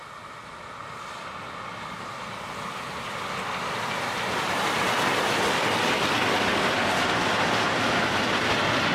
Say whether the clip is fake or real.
real